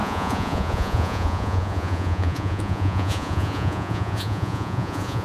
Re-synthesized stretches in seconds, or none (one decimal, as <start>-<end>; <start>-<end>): 0.0-5.2